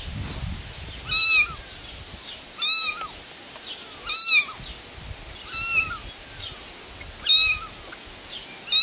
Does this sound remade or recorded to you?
recorded